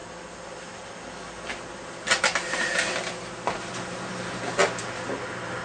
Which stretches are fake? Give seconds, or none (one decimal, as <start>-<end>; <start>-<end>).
none